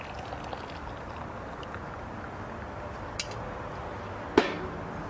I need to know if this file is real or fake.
real